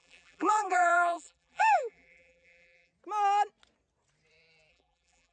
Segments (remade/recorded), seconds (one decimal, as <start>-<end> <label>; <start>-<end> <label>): 0.0-2.9 remade; 2.9-4.7 recorded; 4.7-5.3 remade